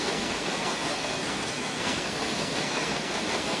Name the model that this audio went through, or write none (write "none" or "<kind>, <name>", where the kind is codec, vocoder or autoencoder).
codec, SNAC